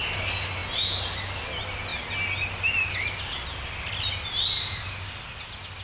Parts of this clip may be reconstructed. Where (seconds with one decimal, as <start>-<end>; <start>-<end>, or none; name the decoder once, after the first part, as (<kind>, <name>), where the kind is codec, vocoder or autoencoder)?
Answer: none